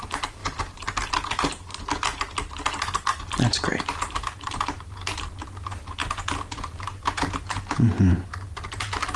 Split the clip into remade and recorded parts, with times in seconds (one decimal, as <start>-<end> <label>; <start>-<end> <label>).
0.0-0.4 remade; 0.4-3.8 recorded; 3.8-6.0 remade; 6.0-6.5 recorded; 6.5-9.2 remade